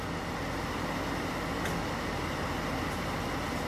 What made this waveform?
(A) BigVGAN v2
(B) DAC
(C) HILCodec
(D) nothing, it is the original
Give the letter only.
D